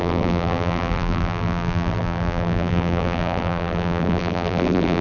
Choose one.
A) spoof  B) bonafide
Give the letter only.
A